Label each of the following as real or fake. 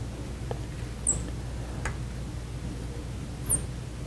real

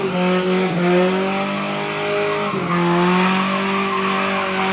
real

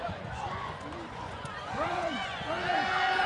fake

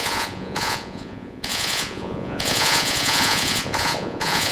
fake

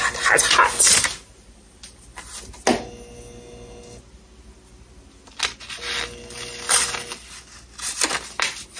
real